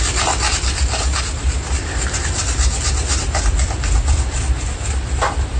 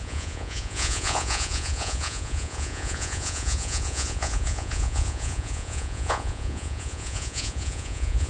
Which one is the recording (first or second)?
first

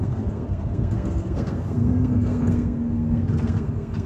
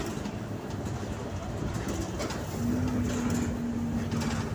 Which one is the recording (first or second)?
second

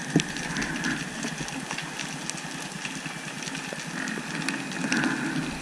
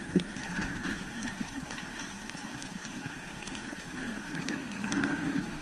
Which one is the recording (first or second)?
first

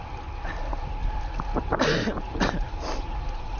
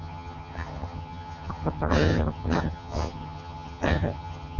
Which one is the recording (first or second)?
first